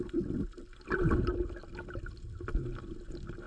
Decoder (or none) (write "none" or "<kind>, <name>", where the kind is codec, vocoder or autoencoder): none